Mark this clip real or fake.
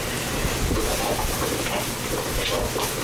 real